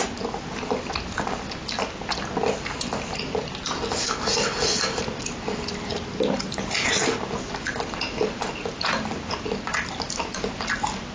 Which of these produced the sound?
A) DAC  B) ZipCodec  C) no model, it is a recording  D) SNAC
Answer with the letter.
C